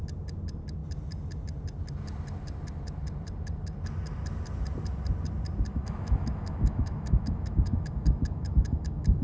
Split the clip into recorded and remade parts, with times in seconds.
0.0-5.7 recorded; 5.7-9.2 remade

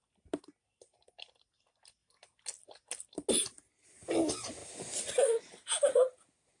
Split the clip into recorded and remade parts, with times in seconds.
0.0-6.6 recorded

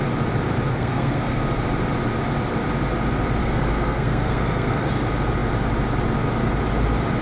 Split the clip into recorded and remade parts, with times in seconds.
0.0-0.7 recorded; 0.7-1.4 remade; 1.4-3.4 recorded; 3.4-4.9 remade; 4.9-7.2 recorded

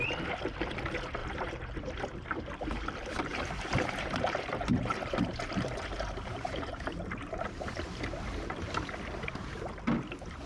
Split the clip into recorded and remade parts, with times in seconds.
0.0-1.2 recorded; 1.2-2.4 remade; 2.4-3.3 recorded; 3.3-7.8 remade; 7.8-10.5 recorded

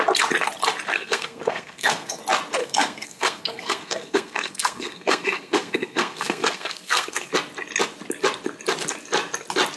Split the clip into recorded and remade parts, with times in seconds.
0.0-0.9 recorded; 0.9-2.2 remade; 2.2-2.6 recorded; 2.6-7.3 remade; 7.3-9.8 recorded

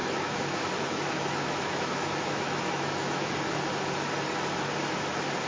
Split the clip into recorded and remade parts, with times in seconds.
0.0-3.3 remade; 3.3-5.5 recorded